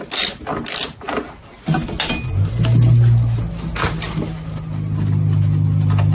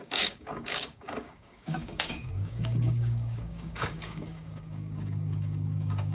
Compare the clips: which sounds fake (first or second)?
second